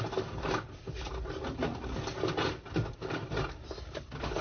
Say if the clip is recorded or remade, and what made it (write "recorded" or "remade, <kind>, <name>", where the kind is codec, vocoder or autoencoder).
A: recorded